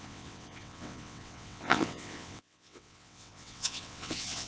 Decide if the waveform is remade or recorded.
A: remade